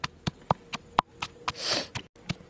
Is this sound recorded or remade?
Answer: recorded